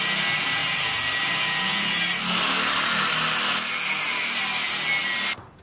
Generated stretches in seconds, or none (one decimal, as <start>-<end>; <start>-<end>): none